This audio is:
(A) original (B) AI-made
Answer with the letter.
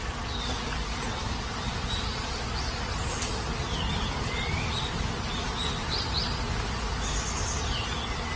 A